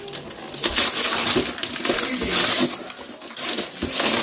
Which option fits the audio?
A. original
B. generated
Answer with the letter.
A